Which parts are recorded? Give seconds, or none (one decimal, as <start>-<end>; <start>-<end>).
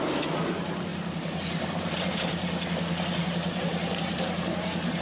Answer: 2.4-3.2